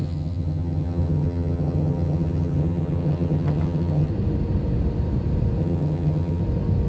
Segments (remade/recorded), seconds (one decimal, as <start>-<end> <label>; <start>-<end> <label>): 0.0-4.1 remade; 4.1-5.6 recorded; 5.6-6.4 remade; 6.4-6.9 recorded